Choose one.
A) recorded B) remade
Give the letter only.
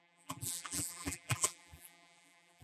B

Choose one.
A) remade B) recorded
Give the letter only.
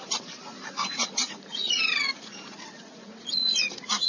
A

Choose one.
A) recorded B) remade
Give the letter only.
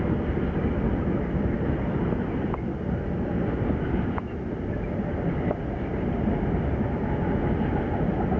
A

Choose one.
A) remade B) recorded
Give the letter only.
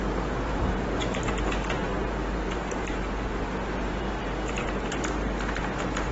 A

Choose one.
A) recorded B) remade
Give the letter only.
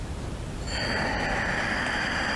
A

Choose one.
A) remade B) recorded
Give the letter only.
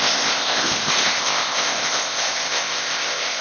A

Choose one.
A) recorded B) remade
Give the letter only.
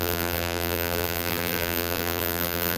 B